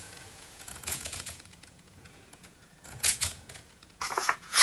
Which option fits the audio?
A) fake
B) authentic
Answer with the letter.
A